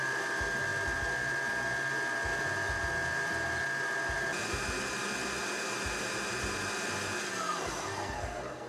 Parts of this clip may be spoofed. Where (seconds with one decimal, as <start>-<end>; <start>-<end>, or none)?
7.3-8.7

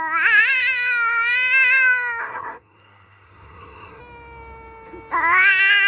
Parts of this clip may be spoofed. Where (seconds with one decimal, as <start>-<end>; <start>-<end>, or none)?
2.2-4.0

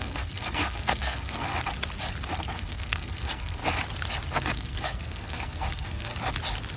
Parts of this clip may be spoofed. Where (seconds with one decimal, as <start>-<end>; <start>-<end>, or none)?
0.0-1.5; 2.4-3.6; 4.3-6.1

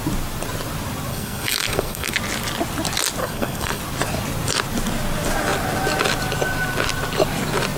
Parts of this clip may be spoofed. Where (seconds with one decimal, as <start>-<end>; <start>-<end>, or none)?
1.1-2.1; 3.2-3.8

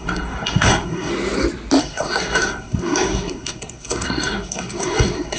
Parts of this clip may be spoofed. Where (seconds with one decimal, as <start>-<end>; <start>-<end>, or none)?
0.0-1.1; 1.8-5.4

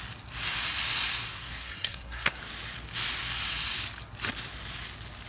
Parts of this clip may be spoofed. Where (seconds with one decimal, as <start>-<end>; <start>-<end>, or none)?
1.3-2.4